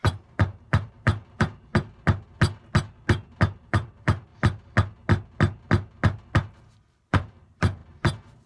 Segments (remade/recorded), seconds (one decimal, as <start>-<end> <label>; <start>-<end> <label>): 0.0-1.7 remade; 1.7-3.6 recorded; 3.6-4.3 remade; 4.3-6.9 recorded; 6.9-8.5 remade